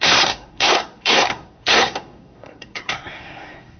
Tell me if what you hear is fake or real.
fake